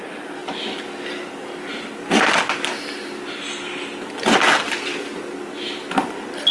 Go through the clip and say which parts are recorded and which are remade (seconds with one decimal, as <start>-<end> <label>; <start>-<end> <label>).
0.0-6.5 recorded